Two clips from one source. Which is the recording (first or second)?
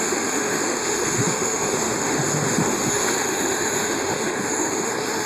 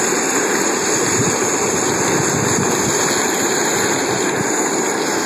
second